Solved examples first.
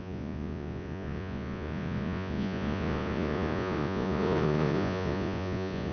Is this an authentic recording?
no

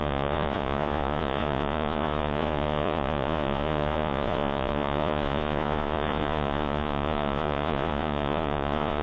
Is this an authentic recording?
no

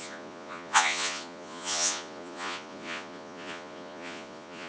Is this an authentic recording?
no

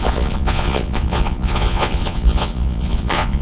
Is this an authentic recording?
no